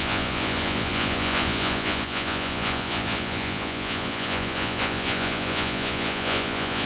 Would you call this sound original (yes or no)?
no